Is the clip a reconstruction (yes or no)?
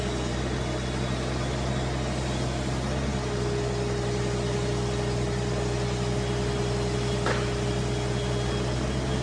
no